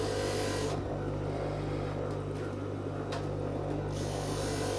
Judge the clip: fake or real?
real